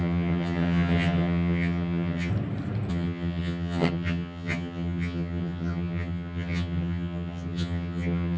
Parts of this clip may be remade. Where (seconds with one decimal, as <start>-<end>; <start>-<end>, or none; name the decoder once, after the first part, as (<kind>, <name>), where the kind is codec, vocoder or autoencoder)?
0.0-2.3 (vocoder, HiFi-GAN); 2.9-8.4